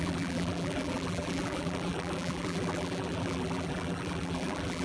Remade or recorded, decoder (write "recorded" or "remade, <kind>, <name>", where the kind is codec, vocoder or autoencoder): remade, vocoder, BigVGAN v2